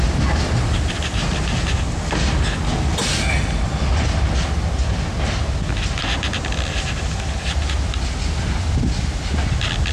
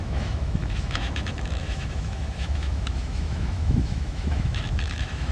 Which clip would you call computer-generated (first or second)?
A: second